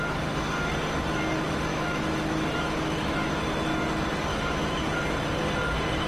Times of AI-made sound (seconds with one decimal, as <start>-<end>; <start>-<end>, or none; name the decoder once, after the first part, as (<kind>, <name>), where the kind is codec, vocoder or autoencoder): 1.7-3.4 (autoencoder, DAC-VAE); 4.3-4.9